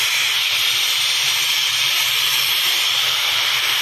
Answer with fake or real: fake